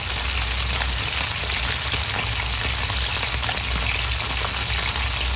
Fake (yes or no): no